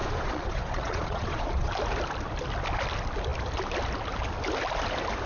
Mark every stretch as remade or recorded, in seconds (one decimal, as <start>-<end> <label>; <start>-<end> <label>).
0.0-1.7 remade; 1.7-5.3 recorded